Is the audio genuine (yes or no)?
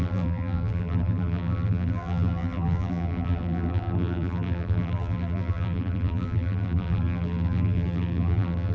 no